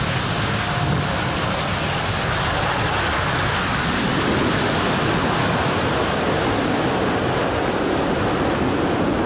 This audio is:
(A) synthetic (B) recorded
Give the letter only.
B